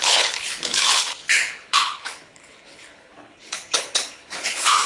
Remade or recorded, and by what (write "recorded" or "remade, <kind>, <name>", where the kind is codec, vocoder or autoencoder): remade, codec, HILCodec